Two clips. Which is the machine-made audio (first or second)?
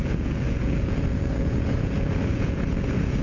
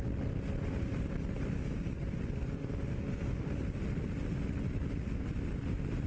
first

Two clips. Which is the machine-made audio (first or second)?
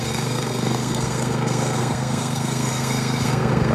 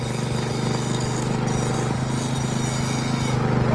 first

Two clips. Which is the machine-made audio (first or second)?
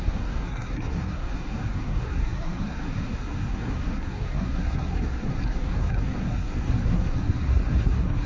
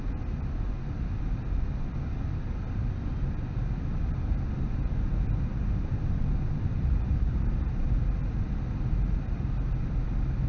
first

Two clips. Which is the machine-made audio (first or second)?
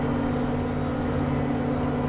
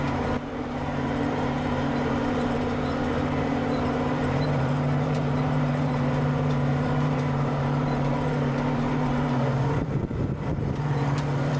second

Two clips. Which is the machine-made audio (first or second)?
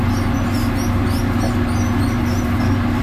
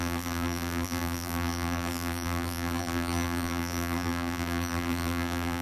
second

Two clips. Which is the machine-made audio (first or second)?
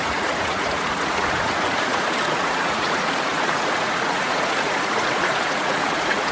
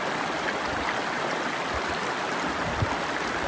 first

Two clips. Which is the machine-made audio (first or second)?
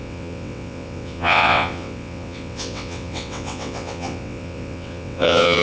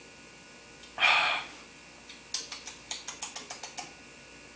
first